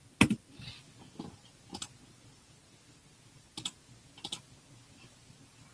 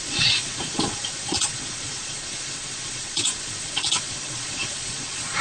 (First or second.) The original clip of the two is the first